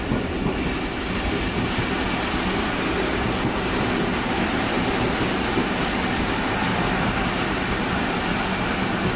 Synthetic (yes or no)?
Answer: no